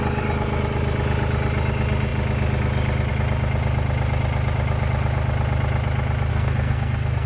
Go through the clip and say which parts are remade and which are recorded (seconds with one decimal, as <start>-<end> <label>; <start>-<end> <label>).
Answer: 0.0-6.3 recorded; 6.3-7.3 remade

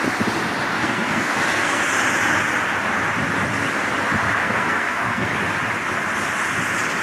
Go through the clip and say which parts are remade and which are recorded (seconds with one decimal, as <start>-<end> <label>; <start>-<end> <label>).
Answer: 0.0-0.7 recorded; 0.7-1.8 remade; 1.8-4.4 recorded; 4.4-5.3 remade; 5.3-7.0 recorded

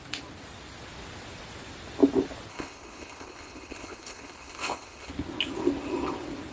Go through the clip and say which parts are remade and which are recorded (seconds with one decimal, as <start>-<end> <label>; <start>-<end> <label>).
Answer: 0.0-2.5 recorded; 2.5-5.1 remade; 5.1-6.5 recorded

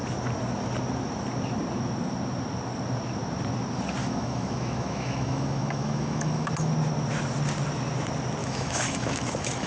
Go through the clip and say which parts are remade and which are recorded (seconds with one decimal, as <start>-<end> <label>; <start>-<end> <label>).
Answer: 0.0-4.0 recorded; 4.0-6.5 remade; 6.5-8.4 recorded; 8.4-9.7 remade

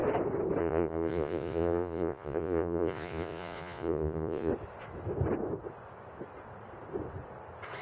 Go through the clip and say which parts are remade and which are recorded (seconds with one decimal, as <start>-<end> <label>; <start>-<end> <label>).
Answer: 0.0-0.6 recorded; 0.6-4.5 remade; 4.5-7.8 recorded

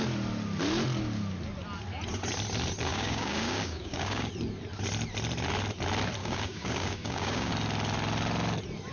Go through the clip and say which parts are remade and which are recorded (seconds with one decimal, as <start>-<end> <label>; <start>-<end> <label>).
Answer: 0.0-2.9 recorded; 2.9-4.3 remade; 4.3-6.2 recorded; 6.2-7.5 remade; 7.5-8.9 recorded

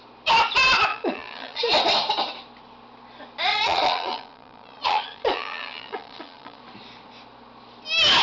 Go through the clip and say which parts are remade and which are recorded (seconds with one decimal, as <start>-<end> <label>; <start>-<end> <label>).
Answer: 0.0-0.9 recorded; 0.9-1.6 remade; 1.6-3.5 recorded; 3.5-6.6 remade; 6.6-8.2 recorded

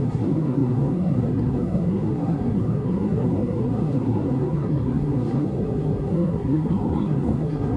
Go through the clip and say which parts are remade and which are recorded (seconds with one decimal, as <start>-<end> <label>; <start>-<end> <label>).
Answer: 0.0-7.8 remade